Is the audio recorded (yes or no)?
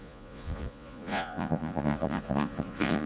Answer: no